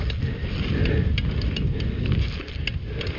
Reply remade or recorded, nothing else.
recorded